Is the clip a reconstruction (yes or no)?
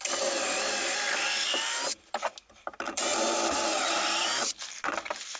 no